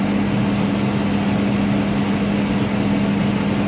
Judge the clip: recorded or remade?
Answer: recorded